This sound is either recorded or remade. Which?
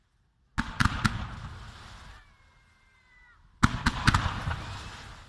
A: recorded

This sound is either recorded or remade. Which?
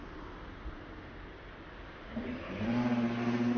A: recorded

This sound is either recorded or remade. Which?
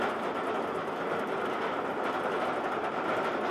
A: recorded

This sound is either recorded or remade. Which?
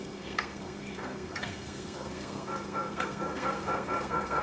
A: remade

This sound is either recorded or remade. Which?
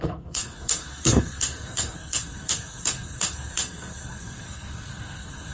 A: remade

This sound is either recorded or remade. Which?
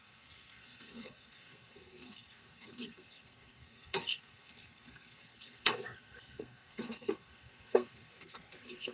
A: remade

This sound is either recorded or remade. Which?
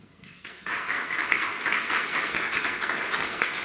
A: remade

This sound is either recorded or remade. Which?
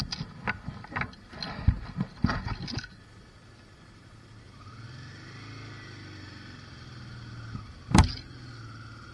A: recorded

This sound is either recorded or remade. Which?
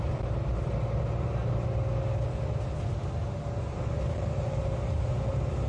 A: recorded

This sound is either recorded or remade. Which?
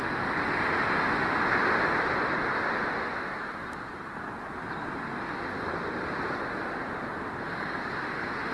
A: recorded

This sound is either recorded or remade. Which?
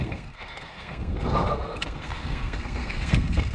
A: remade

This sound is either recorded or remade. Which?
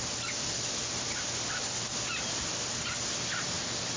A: recorded